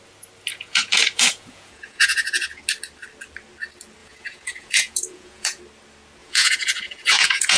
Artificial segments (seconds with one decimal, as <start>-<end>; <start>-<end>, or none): 0.5-2.6; 4.0-5.6; 6.2-7.6